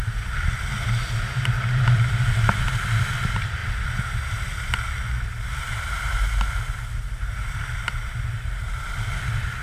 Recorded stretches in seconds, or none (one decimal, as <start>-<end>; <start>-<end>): 0.0-9.6